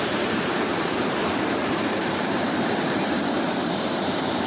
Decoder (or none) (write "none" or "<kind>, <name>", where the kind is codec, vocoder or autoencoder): vocoder, BigVGAN v2